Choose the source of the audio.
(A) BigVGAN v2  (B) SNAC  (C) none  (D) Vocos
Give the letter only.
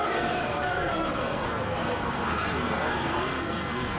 B